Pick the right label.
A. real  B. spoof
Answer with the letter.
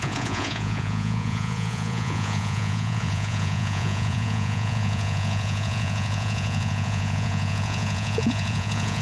B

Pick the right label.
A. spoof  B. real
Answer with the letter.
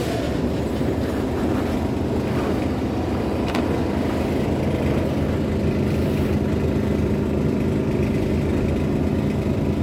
B